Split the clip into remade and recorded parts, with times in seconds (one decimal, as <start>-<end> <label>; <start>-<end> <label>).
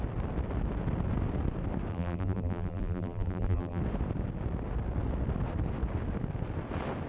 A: 0.0-1.9 recorded; 1.9-3.8 remade; 3.8-7.1 recorded